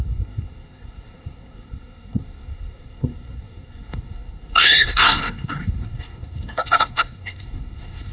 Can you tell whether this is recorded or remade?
remade